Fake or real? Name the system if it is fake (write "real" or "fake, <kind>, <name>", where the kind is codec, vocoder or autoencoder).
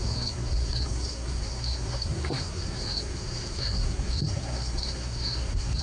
fake, codec, SNAC